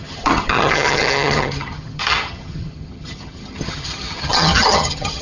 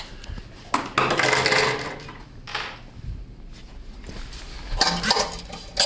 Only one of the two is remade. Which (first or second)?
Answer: first